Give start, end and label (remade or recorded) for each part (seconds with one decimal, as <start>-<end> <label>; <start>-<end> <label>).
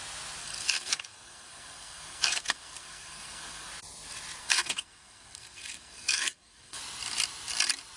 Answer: 0.0-0.4 recorded; 0.4-3.7 remade; 3.7-4.4 recorded; 4.4-6.8 remade; 6.8-8.0 recorded